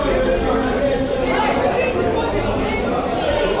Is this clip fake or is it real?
real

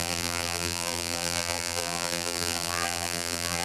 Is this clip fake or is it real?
fake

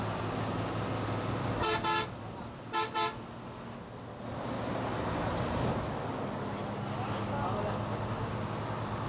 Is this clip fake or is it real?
real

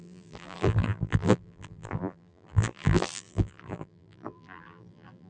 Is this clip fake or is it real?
fake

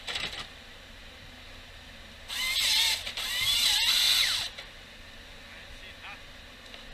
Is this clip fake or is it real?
real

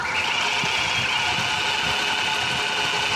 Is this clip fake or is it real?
real